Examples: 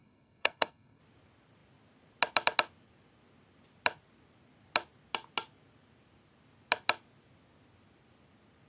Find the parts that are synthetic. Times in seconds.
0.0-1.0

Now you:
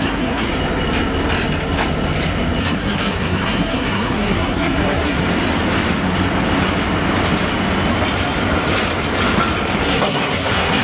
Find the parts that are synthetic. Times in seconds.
0.0-0.5; 2.6-5.2; 9.8-10.8

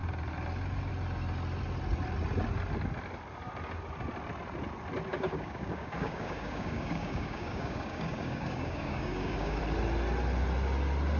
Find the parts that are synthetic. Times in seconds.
5.1-9.6

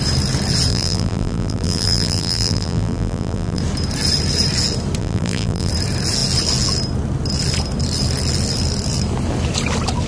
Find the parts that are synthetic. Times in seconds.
0.7-3.6; 5.0-5.7

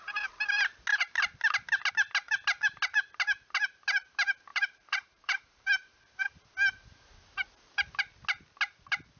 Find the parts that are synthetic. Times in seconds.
4.5-6.5